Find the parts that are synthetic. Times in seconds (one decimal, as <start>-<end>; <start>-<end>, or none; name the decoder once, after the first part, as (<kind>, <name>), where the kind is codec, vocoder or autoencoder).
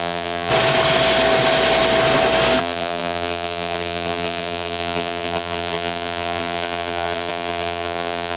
0.0-0.5 (vocoder, BigVGAN v2); 2.6-8.4